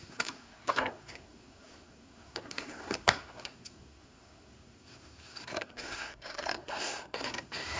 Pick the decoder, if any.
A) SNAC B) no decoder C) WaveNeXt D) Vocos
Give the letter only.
A